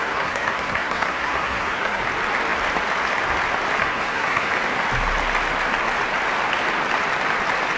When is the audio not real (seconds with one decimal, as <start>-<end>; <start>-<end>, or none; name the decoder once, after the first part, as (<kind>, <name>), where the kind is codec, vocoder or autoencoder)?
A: 0.0-2.0 (codec, SNAC); 3.8-4.5